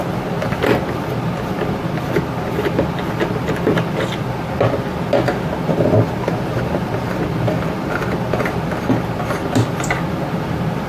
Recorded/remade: recorded